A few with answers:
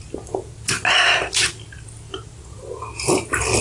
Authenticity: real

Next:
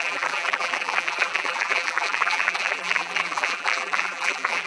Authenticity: fake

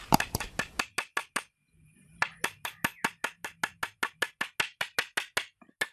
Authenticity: real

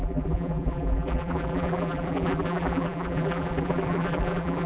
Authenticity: fake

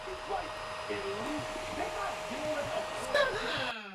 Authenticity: real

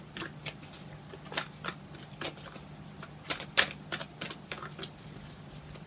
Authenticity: real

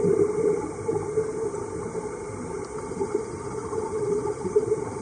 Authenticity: fake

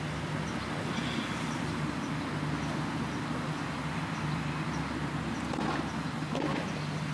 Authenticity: real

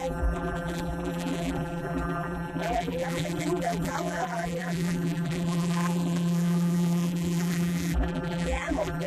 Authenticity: fake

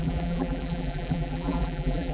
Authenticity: fake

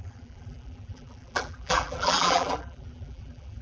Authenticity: fake